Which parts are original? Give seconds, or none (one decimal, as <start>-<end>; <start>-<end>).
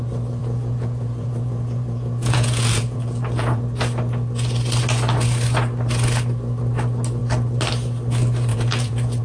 0.0-0.4; 3.6-8.5